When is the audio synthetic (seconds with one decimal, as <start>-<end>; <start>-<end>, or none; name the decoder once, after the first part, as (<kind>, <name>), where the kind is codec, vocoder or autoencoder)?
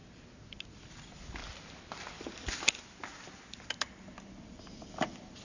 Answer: none